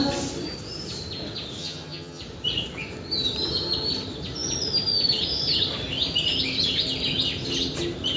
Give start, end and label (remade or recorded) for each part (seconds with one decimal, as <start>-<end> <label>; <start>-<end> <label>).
0.0-1.6 recorded; 1.6-2.2 remade; 2.2-8.2 recorded